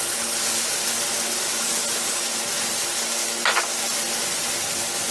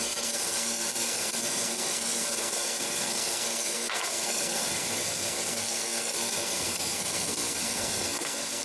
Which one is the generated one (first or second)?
second